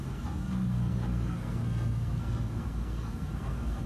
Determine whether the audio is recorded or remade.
remade